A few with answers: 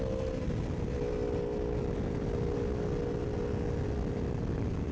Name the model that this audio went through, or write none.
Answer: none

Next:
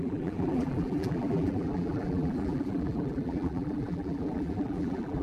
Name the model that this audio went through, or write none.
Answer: vocoder, BigVGAN v2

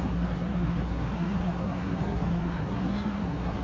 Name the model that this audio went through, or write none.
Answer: codec, SNAC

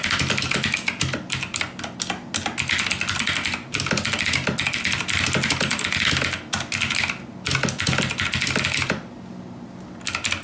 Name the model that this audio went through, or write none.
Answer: none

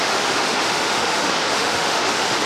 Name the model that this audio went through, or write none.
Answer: autoencoder, DAC-VAE